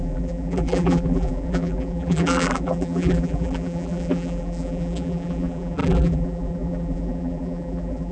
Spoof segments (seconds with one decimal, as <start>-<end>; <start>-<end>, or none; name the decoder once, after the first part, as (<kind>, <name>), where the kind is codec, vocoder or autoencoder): 0.0-8.1 (vocoder, BigVGAN v2)